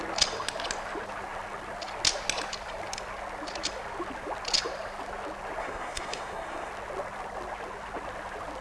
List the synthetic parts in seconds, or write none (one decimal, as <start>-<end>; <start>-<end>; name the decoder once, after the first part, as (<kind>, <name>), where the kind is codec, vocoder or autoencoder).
5.6-6.7 (codec, SNAC)